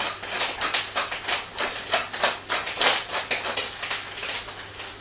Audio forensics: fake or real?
real